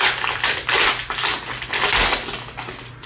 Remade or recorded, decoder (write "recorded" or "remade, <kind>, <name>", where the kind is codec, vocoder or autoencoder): recorded